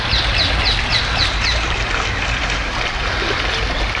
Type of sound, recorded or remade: recorded